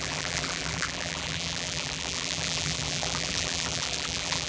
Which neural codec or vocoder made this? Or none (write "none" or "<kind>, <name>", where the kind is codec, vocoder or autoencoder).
vocoder, BigVGAN v2